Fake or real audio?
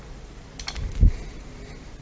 real